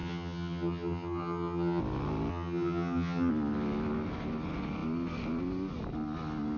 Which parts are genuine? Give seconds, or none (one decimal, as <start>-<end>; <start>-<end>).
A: 1.8-2.3; 3.3-6.6